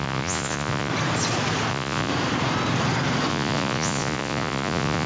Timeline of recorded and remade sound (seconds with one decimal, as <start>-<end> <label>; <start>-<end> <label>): 0.0-0.9 remade; 0.9-1.7 recorded; 1.7-2.1 remade; 2.1-3.3 recorded; 3.3-5.1 remade